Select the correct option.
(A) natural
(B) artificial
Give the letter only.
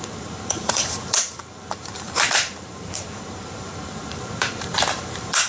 B